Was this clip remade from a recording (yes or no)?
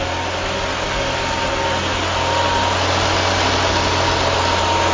no